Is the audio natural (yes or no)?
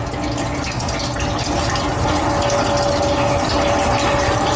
yes